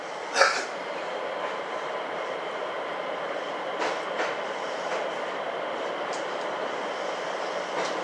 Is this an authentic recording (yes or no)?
no